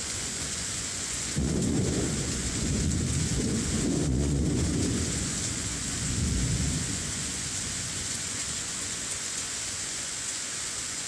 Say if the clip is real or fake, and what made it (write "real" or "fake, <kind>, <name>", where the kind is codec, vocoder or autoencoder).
fake, vocoder, Vocos